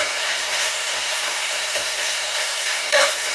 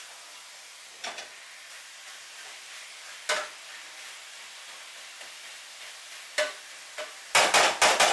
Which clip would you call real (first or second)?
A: second